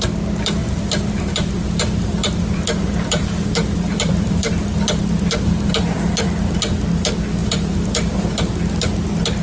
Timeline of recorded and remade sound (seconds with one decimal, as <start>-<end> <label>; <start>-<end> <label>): 0.0-0.6 recorded; 0.6-5.7 remade; 5.7-7.4 recorded; 7.4-8.2 remade; 8.2-9.4 recorded